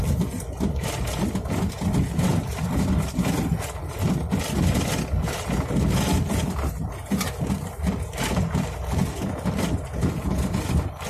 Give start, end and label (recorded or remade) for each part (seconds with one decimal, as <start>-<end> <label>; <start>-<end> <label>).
0.0-11.1 recorded